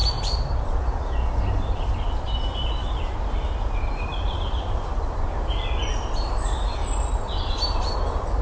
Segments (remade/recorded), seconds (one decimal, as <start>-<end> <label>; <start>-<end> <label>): 0.0-8.4 recorded